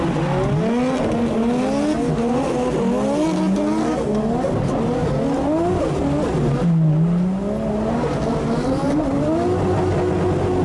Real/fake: real